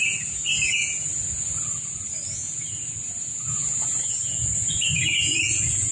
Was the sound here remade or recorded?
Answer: remade